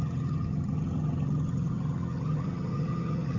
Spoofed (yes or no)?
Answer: yes